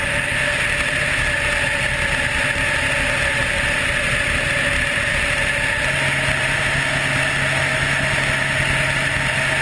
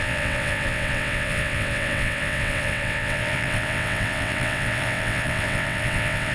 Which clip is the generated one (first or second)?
second